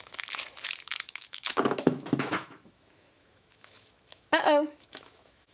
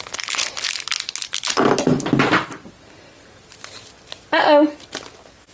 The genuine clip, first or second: second